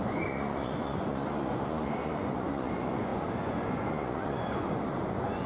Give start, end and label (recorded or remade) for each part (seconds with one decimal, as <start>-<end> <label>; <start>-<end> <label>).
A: 0.0-5.5 remade